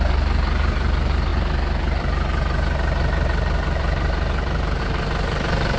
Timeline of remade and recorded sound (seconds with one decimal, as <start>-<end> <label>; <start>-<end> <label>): 0.0-5.8 remade